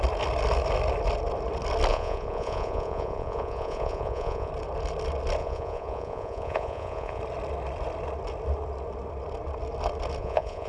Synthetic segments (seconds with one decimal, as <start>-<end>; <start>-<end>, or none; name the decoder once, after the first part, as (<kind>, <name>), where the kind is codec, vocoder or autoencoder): 1.9-4.5 (vocoder, Vocos); 5.4-7.2; 10.2-10.7